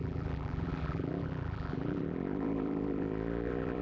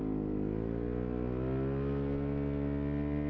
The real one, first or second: second